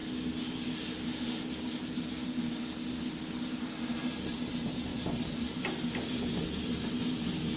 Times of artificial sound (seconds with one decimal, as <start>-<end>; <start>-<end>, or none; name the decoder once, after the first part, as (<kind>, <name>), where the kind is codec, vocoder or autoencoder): none